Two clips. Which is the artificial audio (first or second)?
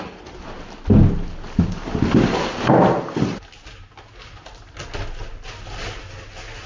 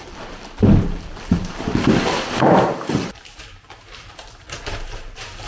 second